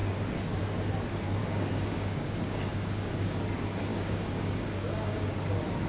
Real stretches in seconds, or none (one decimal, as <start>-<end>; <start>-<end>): 0.0-1.4; 3.4-3.9; 5.3-5.9